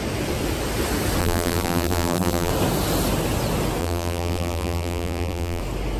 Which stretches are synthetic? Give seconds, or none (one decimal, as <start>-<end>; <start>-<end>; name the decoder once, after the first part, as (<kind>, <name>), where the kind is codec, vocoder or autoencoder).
1.2-2.5 (vocoder, BigVGAN v2); 3.8-5.6